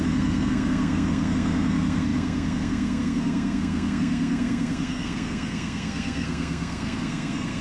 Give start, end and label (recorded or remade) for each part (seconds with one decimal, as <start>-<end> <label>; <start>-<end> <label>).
0.0-7.6 remade